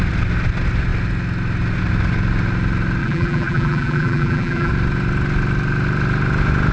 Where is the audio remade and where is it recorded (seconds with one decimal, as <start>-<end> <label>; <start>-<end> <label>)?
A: 0.0-3.0 recorded; 3.0-4.7 remade; 4.7-6.7 recorded